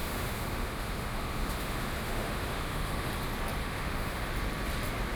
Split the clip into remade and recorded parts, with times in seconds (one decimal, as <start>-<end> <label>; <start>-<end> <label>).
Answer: 0.0-3.1 remade; 3.1-3.6 recorded; 3.6-4.3 remade; 4.3-5.2 recorded